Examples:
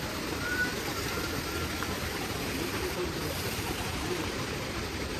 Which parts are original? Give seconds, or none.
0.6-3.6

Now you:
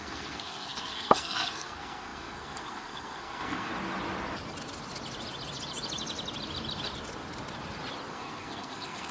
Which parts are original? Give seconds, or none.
3.7-8.1